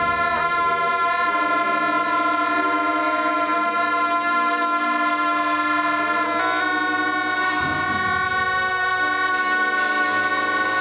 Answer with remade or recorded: recorded